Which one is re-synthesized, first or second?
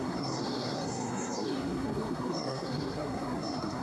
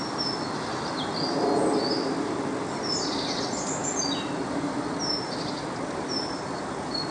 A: first